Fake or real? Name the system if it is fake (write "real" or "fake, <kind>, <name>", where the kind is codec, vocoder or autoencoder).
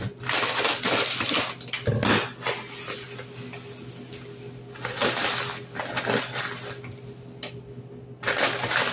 real